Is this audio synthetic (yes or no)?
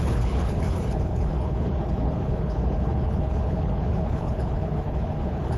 yes